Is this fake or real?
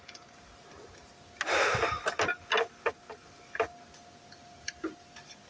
real